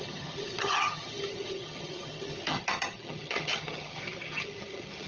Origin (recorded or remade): remade